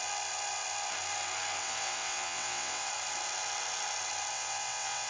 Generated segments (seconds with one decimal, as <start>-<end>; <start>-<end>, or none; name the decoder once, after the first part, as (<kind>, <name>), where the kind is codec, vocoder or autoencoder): 1.6-2.9 (vocoder, WaveNeXt); 4.3-5.1